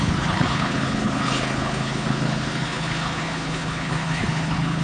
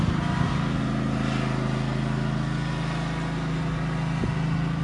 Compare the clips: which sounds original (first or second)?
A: second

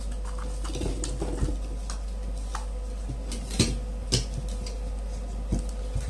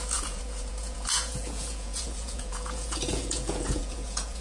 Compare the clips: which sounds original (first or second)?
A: first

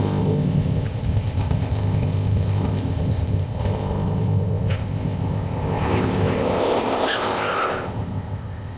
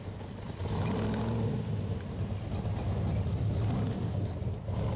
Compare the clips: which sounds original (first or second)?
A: second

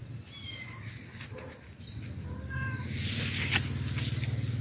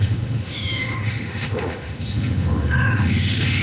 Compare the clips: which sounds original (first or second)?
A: first